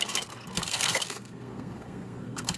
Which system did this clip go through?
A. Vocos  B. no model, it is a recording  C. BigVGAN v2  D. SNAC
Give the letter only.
D